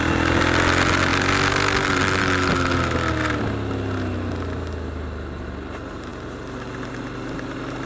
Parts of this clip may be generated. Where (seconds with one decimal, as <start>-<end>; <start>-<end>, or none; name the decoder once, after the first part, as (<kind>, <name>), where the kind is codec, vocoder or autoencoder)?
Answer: none